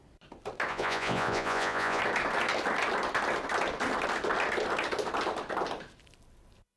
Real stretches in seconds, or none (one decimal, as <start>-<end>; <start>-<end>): 0.0-0.7; 2.0-6.8